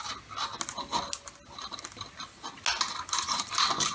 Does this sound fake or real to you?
real